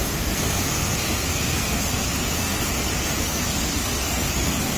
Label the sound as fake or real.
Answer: fake